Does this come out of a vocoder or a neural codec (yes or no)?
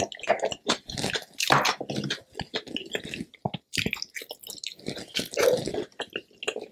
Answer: no